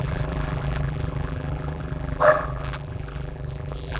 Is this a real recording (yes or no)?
no